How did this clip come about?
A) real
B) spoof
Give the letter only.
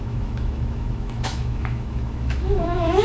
B